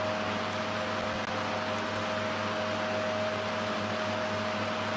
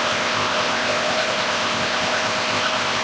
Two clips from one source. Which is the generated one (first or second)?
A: second